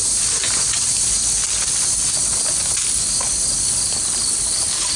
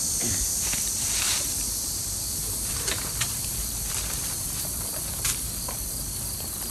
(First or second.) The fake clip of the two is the second